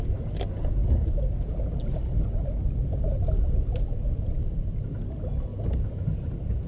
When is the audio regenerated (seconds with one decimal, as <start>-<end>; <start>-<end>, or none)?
none